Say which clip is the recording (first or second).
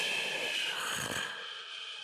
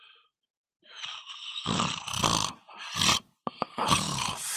first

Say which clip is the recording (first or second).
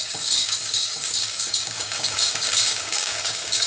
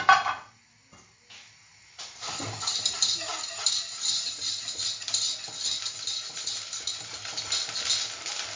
second